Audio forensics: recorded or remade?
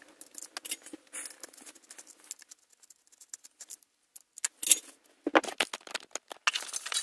recorded